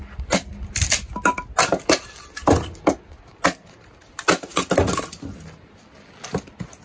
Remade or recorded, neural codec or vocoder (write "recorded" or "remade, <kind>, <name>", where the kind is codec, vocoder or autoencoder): recorded